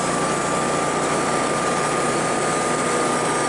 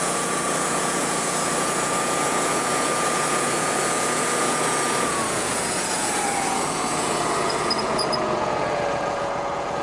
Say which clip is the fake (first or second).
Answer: second